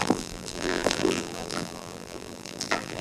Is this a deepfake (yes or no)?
yes